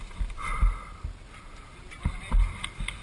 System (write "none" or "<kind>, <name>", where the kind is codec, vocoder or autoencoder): none